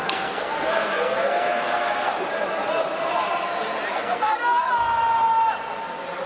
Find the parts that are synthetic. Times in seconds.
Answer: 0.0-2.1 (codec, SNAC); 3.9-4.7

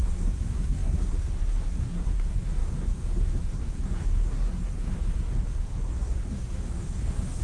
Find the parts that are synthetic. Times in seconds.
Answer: 0.0-7.4 (codec, SNAC)